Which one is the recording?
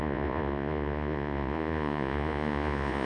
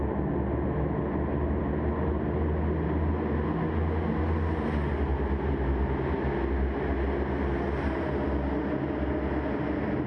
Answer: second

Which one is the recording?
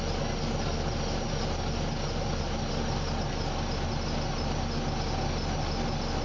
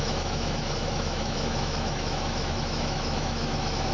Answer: first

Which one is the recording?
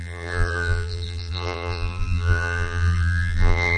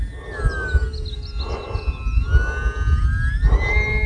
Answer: second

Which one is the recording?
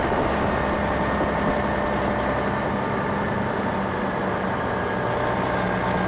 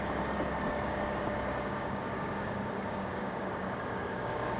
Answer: first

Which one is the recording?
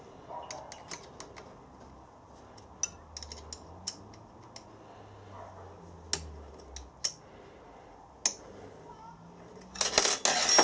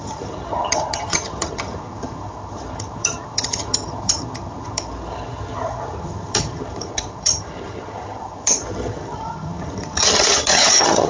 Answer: first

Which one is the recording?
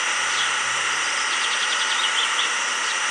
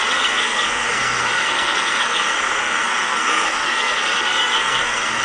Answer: first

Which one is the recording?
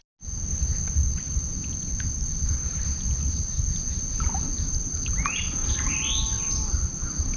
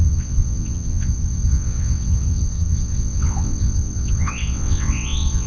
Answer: first